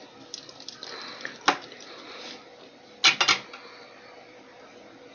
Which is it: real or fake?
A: real